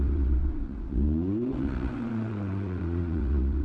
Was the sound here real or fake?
fake